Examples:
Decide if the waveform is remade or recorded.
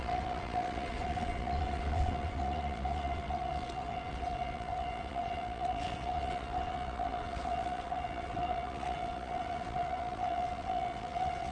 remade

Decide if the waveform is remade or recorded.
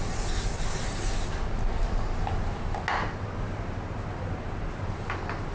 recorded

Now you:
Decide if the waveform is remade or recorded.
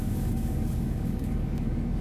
remade